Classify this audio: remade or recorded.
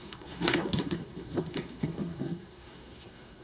remade